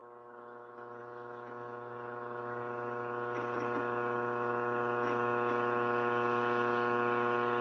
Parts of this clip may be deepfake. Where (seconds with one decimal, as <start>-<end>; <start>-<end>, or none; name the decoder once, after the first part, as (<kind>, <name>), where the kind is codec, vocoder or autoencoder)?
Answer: none